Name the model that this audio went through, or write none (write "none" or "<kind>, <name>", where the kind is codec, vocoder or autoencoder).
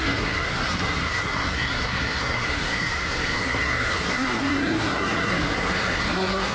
codec, SNAC